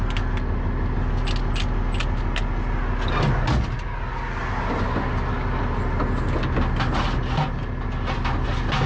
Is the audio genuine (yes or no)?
yes